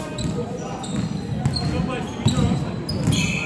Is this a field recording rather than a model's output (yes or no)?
yes